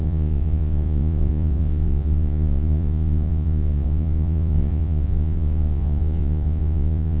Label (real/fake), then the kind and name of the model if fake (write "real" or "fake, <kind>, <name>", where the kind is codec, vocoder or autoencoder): fake, vocoder, Vocos